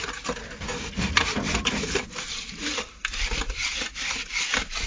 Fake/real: fake